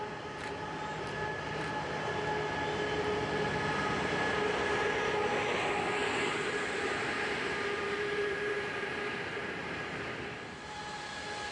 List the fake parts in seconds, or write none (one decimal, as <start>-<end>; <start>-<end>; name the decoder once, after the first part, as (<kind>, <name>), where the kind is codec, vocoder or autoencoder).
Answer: 6.3-11.0 (vocoder, BigVGAN v2)